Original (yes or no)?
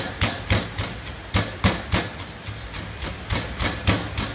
yes